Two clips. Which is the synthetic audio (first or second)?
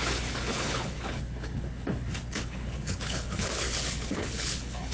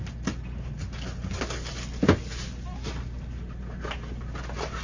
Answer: first